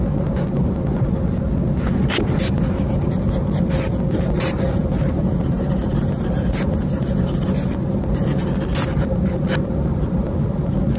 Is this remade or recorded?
recorded